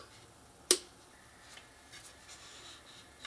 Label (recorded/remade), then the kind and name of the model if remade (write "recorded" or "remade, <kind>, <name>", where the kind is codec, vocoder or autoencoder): recorded